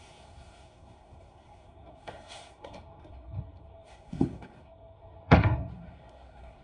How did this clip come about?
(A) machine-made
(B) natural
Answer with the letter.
A